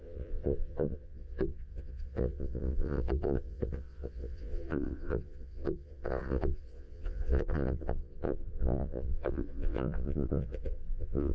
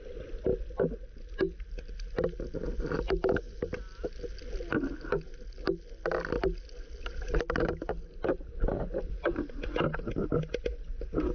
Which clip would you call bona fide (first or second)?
second